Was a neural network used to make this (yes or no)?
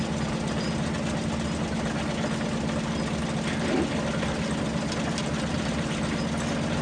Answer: no